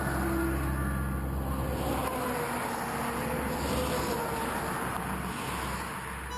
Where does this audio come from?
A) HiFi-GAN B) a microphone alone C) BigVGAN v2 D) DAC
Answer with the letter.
B